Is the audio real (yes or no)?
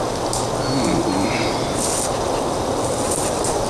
yes